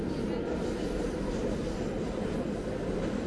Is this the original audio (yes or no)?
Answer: yes